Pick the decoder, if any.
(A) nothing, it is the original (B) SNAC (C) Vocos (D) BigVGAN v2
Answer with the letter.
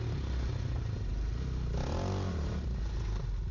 A